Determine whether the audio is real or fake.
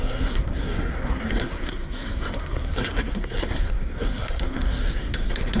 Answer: fake